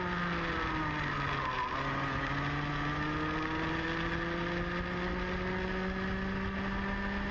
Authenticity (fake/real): real